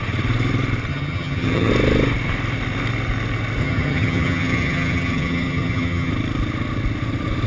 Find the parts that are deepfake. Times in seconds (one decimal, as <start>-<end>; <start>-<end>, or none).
0.9-1.7; 3.6-6.1